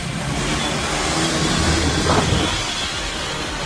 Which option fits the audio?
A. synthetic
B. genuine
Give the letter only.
B